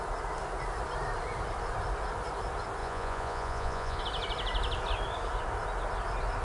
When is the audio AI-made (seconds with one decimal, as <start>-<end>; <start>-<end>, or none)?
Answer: 2.8-4.0